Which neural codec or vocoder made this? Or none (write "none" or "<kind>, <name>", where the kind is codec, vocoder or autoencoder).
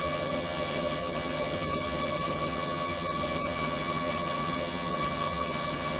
vocoder, HiFi-GAN